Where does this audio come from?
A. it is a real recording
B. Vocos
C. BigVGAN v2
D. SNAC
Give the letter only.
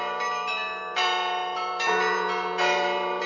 C